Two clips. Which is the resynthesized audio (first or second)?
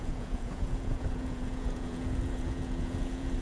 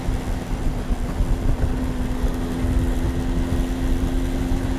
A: first